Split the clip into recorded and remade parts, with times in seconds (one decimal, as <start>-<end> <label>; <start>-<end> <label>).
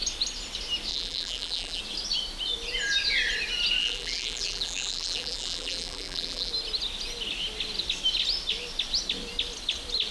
0.0-0.9 recorded; 0.9-1.8 remade; 1.8-3.8 recorded; 3.8-6.5 remade; 6.5-10.1 recorded